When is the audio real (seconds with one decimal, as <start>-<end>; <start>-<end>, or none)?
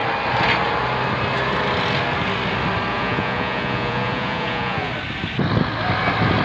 0.0-2.9; 4.9-6.4